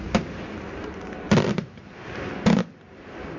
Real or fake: real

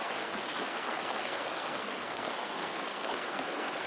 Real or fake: fake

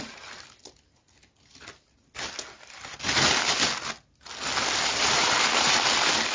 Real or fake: real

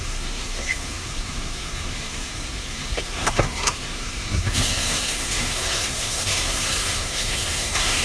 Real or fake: fake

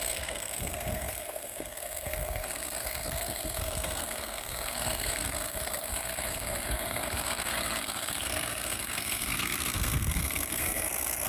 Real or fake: fake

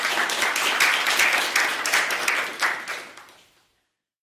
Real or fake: real